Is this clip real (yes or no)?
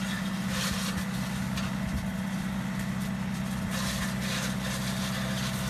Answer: yes